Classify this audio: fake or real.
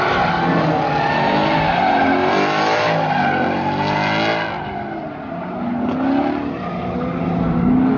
real